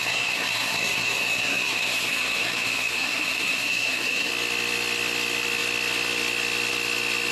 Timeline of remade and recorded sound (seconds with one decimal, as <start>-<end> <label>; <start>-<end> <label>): 0.0-4.3 remade; 4.3-7.3 recorded